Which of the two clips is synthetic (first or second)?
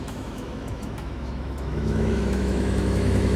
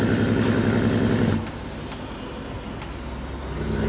first